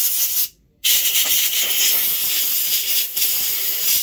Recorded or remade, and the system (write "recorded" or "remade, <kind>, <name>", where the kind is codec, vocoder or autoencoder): recorded